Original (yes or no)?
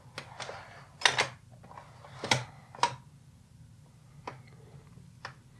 yes